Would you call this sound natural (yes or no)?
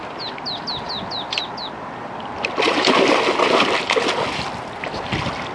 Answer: yes